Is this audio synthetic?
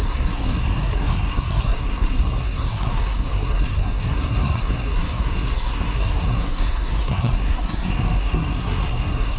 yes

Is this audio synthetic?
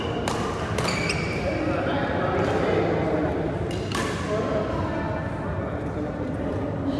no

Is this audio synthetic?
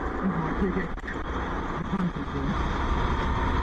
no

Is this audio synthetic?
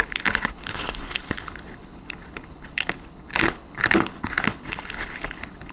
yes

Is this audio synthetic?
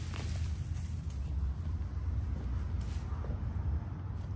no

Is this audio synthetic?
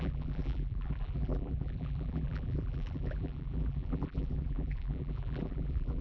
yes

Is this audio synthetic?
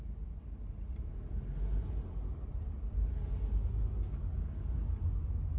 no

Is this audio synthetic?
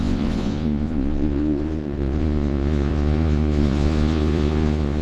yes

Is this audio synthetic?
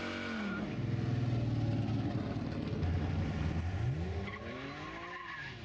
no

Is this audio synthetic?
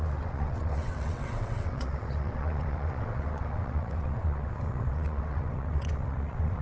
yes